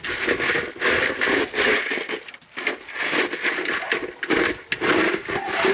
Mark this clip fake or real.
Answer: real